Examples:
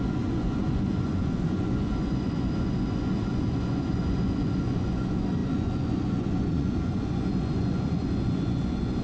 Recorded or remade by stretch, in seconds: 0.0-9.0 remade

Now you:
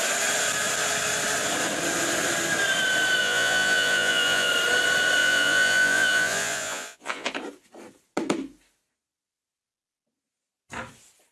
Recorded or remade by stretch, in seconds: 0.0-3.2 recorded; 3.2-4.5 remade; 4.5-5.2 recorded; 5.2-7.3 remade; 7.3-11.3 recorded